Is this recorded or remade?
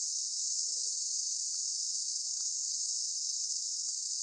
remade